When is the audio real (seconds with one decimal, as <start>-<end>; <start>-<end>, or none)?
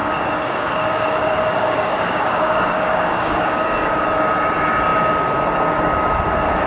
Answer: 4.0-6.7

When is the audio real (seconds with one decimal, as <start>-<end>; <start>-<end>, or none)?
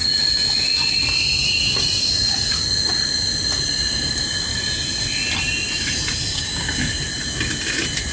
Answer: 0.0-6.3; 6.9-8.1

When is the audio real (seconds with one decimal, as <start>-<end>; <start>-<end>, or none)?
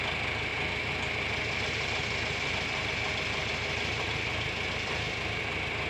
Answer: 0.0-5.9